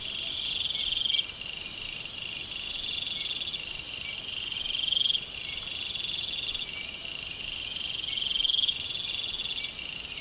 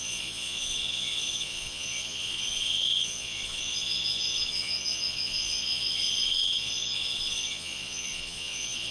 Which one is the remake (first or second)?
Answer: second